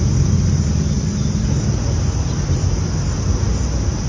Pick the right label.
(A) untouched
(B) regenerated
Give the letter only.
A